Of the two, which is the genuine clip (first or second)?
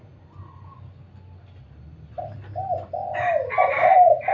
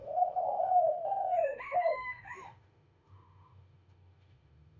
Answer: first